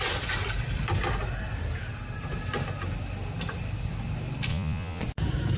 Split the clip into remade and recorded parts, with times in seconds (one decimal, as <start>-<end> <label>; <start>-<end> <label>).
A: 0.0-4.5 recorded; 4.5-5.0 remade; 5.0-5.6 recorded